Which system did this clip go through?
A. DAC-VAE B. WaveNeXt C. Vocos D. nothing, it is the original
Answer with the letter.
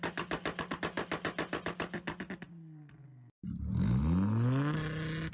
D